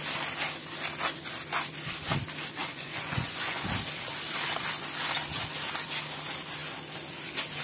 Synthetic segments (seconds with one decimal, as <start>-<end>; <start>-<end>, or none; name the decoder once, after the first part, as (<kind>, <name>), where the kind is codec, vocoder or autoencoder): 2.6-3.7 (vocoder, Vocos)